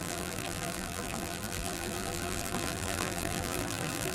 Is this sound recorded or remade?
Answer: remade